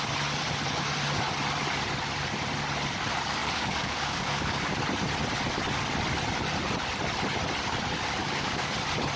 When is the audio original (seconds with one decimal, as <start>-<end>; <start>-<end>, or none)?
0.0-3.4; 4.7-8.2; 8.7-9.2